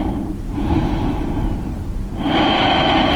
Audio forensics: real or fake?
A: fake